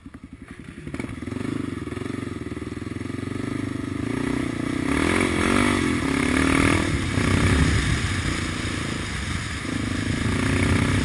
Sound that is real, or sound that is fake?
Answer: real